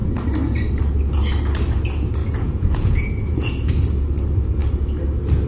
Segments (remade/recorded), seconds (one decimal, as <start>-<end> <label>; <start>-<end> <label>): 0.0-2.2 recorded; 2.2-3.7 remade; 3.7-5.5 recorded